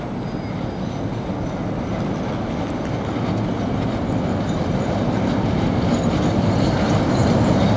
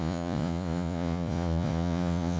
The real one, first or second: first